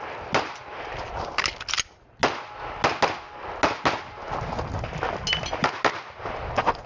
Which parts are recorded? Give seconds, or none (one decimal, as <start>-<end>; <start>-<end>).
0.0-6.9